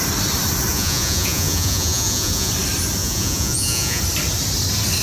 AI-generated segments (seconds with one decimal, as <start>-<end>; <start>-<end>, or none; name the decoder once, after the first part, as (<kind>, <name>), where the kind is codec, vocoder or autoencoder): 0.7-2.5 (vocoder, Vocos); 3.0-4.0